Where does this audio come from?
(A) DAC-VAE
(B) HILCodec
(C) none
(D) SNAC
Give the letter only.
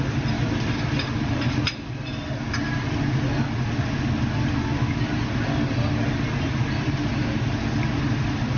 C